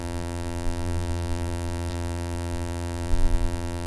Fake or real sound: fake